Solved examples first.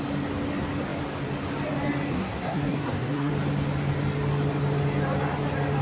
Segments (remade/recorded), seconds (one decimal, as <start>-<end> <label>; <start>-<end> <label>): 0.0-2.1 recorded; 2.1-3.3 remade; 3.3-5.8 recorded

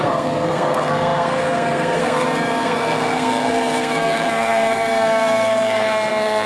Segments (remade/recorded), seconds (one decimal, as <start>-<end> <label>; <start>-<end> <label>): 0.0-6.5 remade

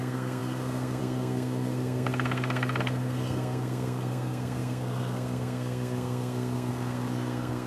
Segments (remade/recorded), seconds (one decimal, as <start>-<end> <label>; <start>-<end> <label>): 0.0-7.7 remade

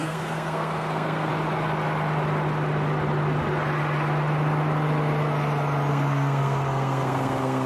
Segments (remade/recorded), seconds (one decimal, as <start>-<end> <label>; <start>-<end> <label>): 0.0-1.3 remade; 1.3-5.9 recorded; 5.9-7.7 remade

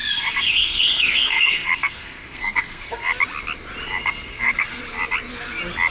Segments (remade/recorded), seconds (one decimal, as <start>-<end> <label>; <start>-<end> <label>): 0.0-3.1 remade; 3.1-4.0 recorded; 4.0-4.8 remade; 4.8-5.9 recorded

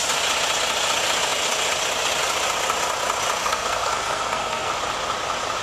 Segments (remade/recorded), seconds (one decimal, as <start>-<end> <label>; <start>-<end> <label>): 0.0-3.4 recorded; 3.4-4.7 remade; 4.7-5.6 recorded

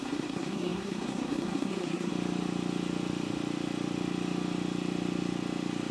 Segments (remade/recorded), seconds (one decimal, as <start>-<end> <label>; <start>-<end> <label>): 0.0-2.1 remade; 2.1-5.9 recorded